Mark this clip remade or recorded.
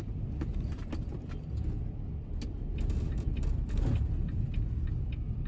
recorded